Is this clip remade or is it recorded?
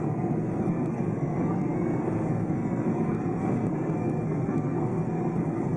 remade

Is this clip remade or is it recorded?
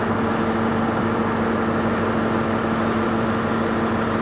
recorded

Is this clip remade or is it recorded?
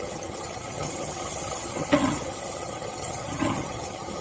remade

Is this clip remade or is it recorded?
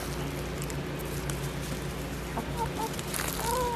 recorded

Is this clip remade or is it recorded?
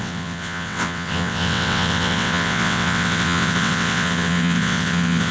remade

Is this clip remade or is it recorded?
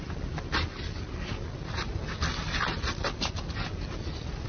recorded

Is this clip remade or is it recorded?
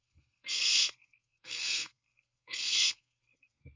remade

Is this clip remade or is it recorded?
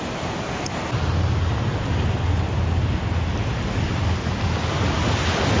recorded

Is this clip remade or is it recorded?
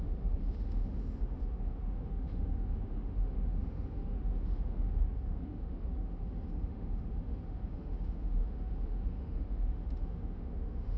remade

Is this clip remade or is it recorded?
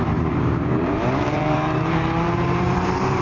remade